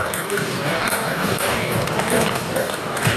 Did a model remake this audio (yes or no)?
yes